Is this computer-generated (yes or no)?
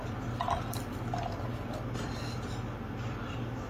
no